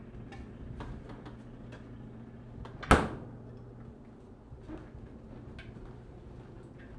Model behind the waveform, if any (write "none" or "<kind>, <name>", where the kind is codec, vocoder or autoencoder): none